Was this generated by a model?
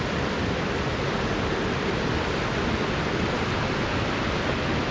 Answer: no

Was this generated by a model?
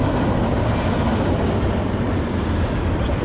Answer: no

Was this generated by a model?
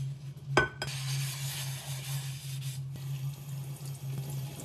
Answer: no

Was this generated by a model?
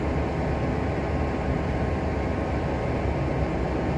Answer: no